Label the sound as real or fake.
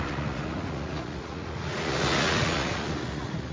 fake